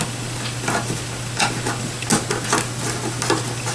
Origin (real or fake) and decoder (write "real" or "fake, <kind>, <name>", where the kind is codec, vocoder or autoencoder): real